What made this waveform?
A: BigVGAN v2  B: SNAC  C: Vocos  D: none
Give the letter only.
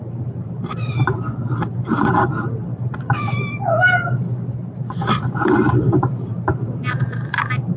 A